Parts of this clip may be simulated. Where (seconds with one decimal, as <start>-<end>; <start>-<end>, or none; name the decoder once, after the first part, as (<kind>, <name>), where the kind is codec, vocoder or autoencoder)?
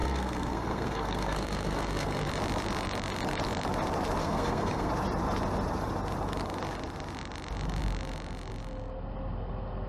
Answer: 0.0-2.3 (codec, SNAC); 4.2-4.9